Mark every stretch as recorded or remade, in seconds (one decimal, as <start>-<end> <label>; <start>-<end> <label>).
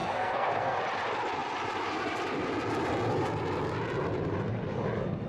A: 0.0-0.8 remade; 0.8-5.3 recorded